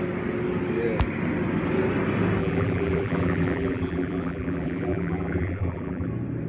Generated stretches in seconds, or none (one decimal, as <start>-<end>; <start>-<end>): 2.4-6.1